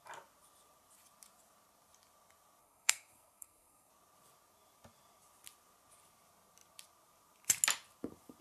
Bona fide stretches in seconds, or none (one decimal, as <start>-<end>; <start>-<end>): 0.0-2.6; 3.9-8.4